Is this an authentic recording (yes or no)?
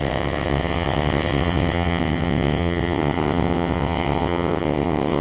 no